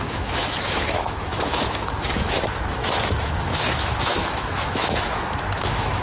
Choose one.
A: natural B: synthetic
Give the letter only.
B